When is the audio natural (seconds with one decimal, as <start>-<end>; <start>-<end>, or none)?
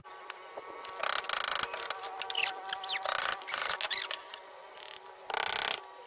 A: 0.0-6.1